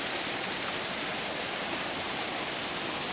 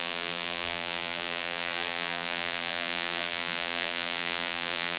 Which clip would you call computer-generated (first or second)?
second